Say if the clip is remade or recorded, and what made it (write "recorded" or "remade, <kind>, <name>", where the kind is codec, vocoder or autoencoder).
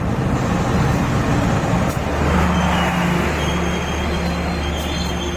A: recorded